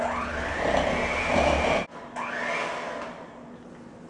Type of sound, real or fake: real